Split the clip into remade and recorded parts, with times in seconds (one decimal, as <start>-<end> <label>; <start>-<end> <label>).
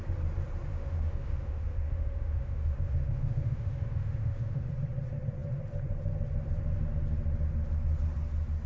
0.0-0.7 recorded; 0.7-4.7 remade; 4.7-8.7 recorded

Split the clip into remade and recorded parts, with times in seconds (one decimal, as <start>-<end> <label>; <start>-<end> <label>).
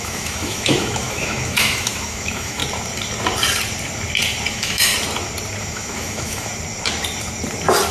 0.0-2.6 remade; 2.6-4.5 recorded; 4.5-4.9 remade; 4.9-5.6 recorded; 5.6-6.5 remade; 6.5-7.9 recorded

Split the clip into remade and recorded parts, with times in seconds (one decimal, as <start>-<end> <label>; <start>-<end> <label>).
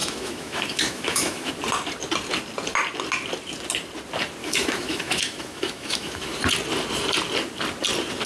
0.0-1.5 remade; 1.5-4.4 recorded; 4.4-6.4 remade; 6.4-8.3 recorded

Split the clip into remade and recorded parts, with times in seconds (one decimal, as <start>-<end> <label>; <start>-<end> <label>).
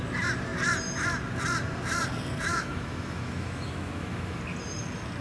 0.0-2.5 recorded; 2.5-4.4 remade; 4.4-5.2 recorded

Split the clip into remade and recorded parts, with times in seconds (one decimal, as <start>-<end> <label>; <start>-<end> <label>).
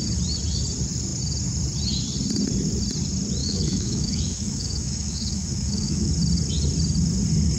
0.0-3.4 recorded; 3.4-6.1 remade; 6.1-7.6 recorded